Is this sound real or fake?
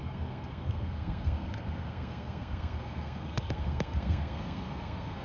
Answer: fake